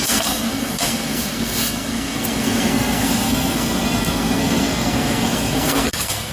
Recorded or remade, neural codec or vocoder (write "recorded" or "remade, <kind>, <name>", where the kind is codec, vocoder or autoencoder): remade, codec, SNAC